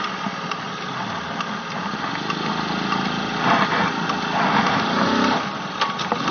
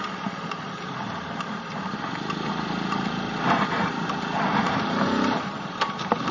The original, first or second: first